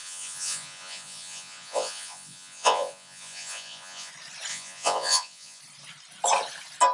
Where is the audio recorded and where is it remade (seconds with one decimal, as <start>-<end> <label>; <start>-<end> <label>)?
0.0-4.1 remade; 4.1-4.5 recorded; 4.5-5.6 remade; 5.6-6.9 recorded